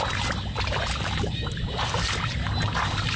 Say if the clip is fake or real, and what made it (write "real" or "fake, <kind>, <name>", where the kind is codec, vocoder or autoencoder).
real